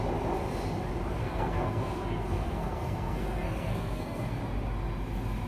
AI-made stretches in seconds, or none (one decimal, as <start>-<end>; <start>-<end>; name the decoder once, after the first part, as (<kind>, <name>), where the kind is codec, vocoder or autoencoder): 1.2-4.4 (codec, SNAC)